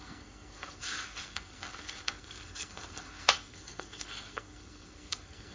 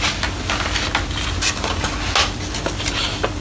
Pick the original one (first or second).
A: second